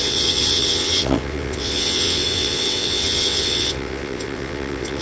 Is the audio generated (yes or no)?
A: yes